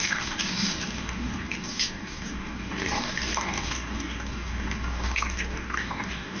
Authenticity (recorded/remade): remade